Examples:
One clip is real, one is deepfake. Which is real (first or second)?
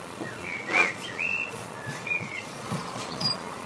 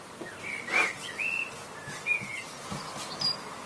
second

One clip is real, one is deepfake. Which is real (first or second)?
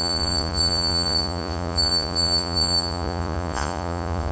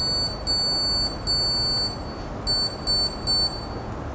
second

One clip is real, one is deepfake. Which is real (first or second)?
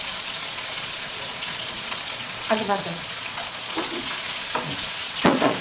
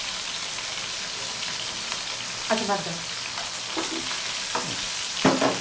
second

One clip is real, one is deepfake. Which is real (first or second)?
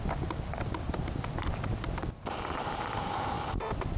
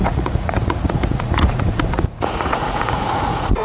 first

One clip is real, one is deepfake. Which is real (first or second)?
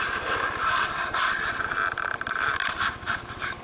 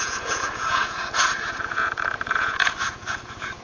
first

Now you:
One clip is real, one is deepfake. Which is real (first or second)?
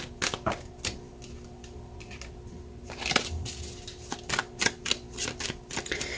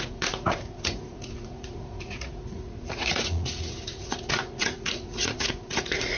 first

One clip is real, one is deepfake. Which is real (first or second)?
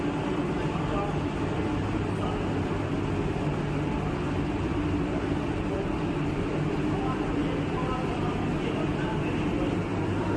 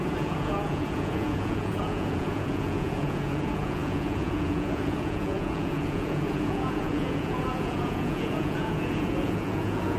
first